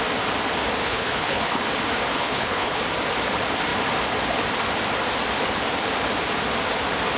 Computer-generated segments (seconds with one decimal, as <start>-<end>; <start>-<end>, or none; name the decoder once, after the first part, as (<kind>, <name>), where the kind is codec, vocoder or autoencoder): 0.8-1.6 (codec, HILCodec); 2.1-2.8